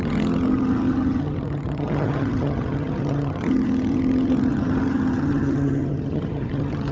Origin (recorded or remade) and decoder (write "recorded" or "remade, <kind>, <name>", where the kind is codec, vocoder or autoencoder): remade, vocoder, HiFi-GAN